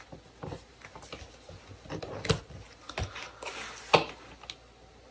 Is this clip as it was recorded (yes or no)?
yes